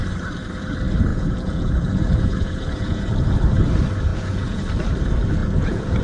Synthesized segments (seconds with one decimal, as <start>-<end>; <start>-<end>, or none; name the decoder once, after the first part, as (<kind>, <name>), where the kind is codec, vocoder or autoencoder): 1.1-3.1 (vocoder, Vocos); 4.1-4.6; 5.4-6.0